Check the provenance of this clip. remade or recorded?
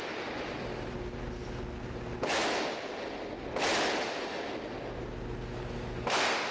recorded